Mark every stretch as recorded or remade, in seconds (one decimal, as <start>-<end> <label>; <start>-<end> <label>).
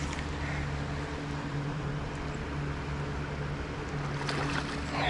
0.0-1.5 recorded; 1.5-2.0 remade; 2.0-5.1 recorded